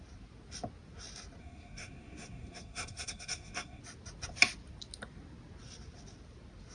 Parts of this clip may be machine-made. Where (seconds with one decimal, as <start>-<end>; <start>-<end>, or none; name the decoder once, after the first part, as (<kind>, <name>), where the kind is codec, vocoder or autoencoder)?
1.4-3.8 (codec, SNAC)